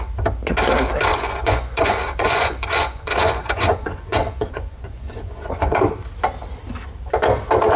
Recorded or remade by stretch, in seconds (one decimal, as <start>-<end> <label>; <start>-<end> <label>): 0.0-1.1 recorded; 1.1-5.8 remade; 5.8-7.8 recorded

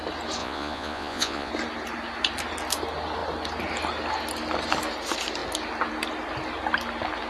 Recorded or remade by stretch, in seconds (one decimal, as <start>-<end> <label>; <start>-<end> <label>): 0.0-0.4 recorded; 0.4-1.5 remade; 1.5-7.3 recorded